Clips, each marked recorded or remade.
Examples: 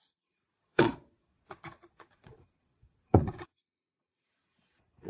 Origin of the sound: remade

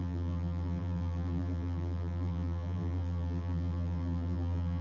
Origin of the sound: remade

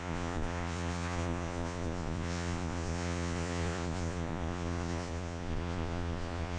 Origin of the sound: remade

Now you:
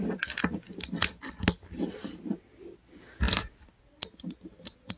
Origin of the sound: recorded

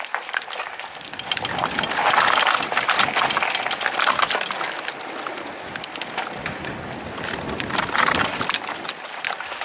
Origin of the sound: recorded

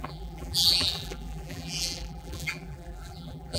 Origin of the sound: remade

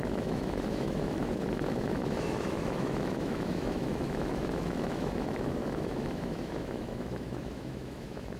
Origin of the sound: remade